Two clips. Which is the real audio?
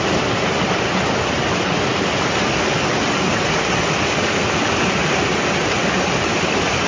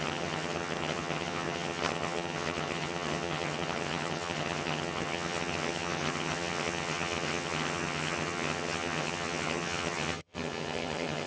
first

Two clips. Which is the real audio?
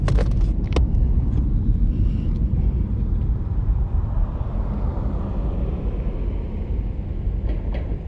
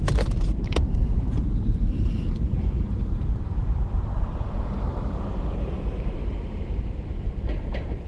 first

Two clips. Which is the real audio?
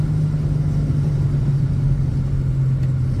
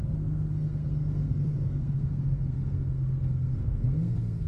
first